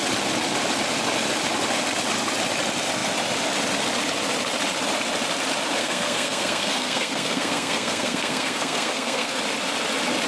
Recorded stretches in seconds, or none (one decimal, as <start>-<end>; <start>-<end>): 0.0-5.8; 9.4-10.3